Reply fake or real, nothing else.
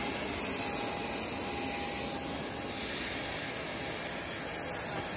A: real